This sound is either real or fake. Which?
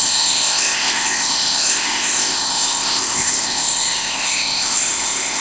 fake